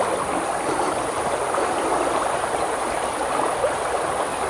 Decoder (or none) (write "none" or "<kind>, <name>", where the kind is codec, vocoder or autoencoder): none